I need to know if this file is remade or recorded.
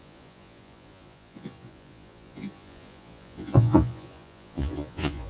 remade